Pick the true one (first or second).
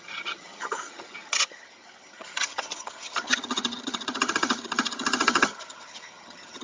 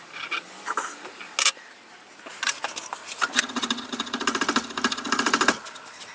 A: second